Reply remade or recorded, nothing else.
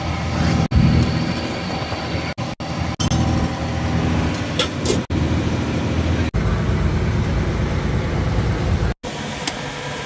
recorded